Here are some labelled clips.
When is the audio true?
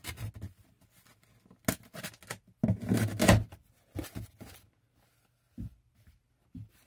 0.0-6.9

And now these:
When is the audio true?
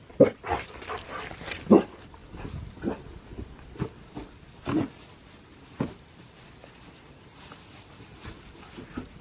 2.2-3.4; 4.2-7.4